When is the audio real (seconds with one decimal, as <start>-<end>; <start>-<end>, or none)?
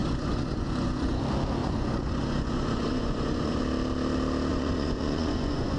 1.2-1.6; 3.6-4.5